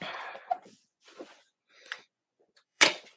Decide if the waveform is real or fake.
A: fake